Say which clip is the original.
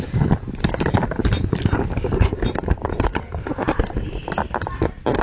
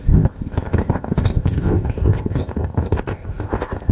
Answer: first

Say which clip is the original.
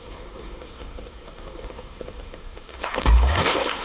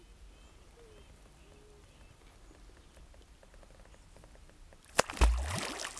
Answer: second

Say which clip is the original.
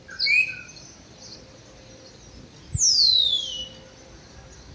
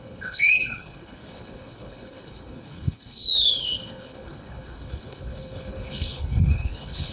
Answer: first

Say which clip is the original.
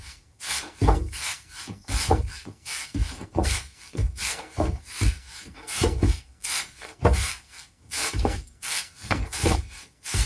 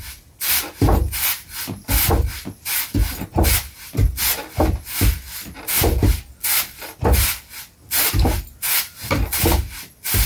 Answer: second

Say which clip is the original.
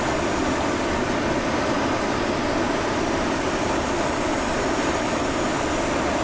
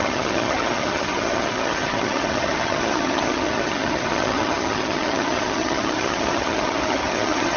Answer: first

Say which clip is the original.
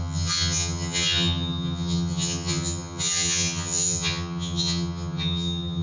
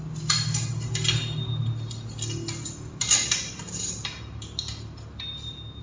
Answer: second